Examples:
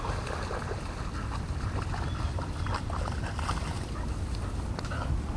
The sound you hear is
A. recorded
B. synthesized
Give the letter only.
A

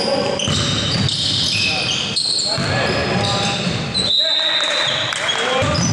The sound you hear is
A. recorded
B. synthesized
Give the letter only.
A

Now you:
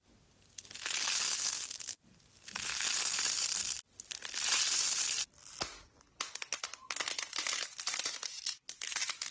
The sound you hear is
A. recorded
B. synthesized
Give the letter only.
A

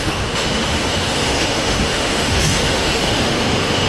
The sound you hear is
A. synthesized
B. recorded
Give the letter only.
A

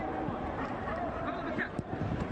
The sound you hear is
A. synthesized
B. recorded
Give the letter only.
A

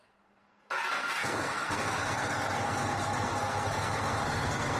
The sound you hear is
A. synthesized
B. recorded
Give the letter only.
A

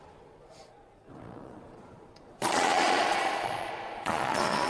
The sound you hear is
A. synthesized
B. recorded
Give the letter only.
A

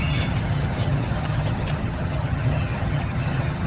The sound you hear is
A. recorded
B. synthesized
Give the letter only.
B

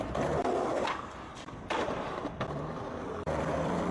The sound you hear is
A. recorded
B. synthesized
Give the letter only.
B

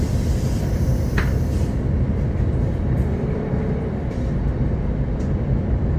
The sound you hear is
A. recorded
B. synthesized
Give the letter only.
B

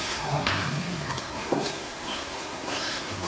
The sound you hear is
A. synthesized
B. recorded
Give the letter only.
A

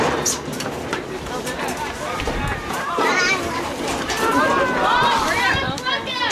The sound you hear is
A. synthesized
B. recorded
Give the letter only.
A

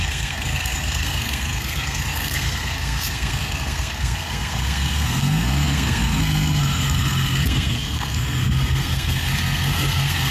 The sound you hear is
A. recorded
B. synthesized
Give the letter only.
B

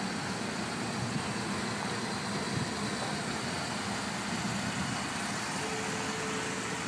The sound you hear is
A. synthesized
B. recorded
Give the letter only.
B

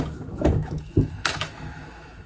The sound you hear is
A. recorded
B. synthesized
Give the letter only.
B